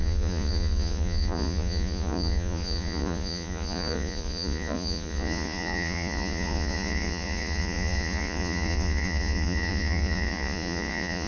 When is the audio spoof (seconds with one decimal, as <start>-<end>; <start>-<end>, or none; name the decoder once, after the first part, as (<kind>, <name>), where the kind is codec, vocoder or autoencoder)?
0.0-11.3 (vocoder, Vocos)